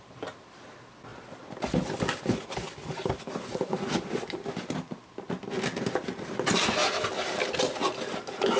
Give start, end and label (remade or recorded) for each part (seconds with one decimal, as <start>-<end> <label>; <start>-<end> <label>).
0.0-8.6 recorded